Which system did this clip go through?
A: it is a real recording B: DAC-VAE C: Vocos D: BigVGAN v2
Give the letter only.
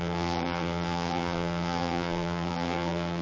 D